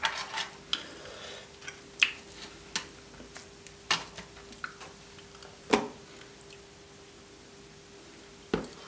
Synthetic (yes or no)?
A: no